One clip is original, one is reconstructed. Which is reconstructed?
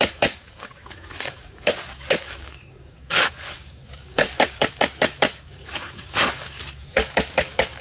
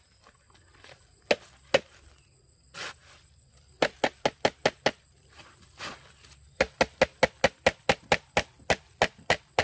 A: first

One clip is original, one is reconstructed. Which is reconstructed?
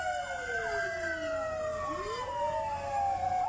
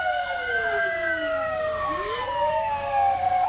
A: second